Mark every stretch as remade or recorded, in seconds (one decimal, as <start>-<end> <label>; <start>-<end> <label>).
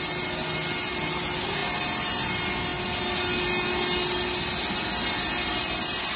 0.0-6.2 recorded